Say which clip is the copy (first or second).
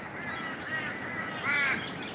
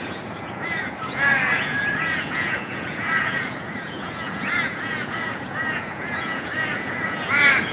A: second